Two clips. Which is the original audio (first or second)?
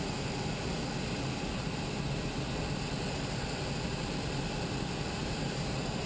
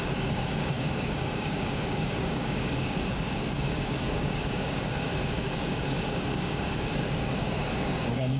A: first